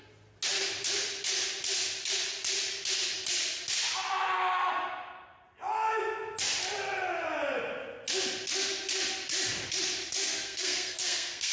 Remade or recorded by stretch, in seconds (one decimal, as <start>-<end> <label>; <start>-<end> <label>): 0.0-10.3 recorded; 10.3-11.5 remade